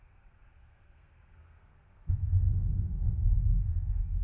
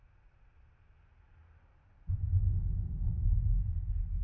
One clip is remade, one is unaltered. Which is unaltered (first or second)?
second